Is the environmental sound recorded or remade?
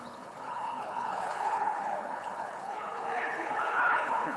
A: remade